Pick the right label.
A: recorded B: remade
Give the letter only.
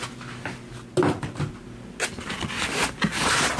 A